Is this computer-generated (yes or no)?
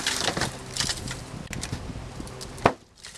no